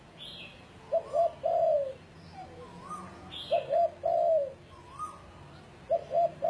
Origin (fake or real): real